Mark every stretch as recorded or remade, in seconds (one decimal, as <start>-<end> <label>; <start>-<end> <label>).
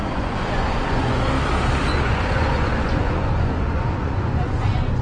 0.0-1.2 remade; 1.2-1.9 recorded; 1.9-5.0 remade